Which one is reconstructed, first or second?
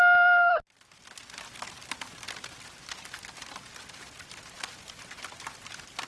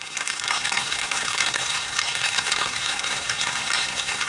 second